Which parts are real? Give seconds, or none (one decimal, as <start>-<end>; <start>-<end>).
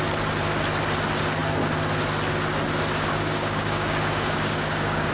0.0-3.1